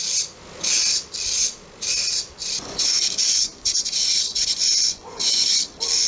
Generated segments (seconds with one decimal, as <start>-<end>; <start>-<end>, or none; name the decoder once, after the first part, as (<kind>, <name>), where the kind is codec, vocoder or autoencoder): 2.4-5.6 (vocoder, Vocos)